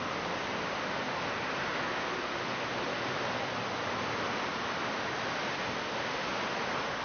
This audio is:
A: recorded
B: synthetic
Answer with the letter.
A